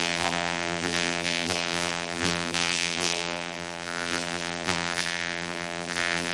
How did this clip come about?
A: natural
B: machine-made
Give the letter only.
B